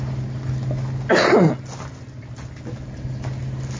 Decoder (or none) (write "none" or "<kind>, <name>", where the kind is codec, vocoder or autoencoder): none